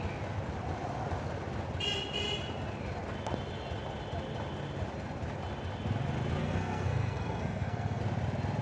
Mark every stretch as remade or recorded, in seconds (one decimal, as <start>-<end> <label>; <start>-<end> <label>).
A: 0.0-6.4 recorded; 6.4-8.0 remade; 8.0-8.6 recorded